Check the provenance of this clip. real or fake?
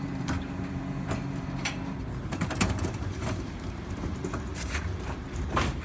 fake